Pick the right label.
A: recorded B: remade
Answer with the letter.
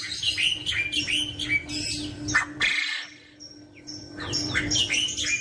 A